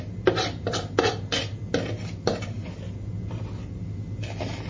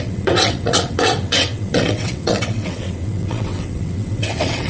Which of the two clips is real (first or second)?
first